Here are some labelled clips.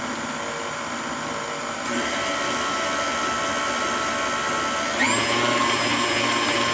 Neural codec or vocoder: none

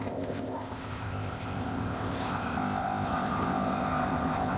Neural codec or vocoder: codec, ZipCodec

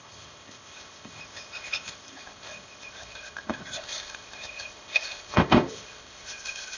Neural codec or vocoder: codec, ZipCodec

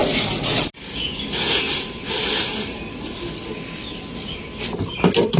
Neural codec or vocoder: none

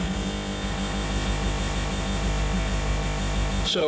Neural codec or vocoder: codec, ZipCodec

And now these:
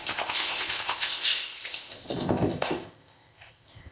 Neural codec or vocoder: codec, ZipCodec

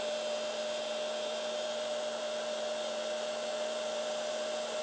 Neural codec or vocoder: none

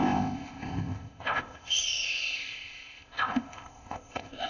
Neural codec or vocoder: codec, ZipCodec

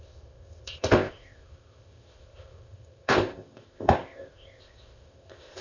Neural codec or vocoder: codec, ZipCodec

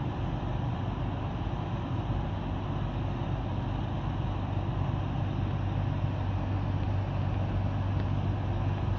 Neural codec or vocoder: none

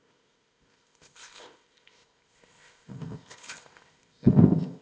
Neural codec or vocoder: codec, ZipCodec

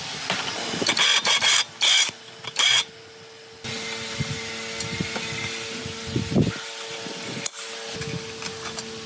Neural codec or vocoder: none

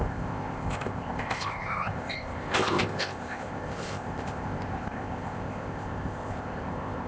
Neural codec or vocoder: codec, ZipCodec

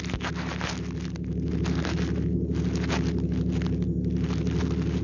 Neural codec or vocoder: none